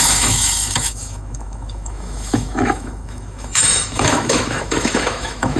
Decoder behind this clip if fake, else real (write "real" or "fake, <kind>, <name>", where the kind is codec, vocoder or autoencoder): fake, autoencoder, DAC-VAE